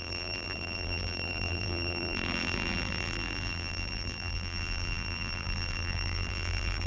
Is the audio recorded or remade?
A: remade